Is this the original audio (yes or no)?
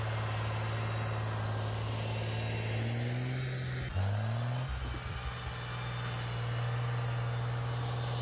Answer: yes